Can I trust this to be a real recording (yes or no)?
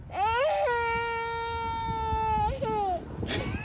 yes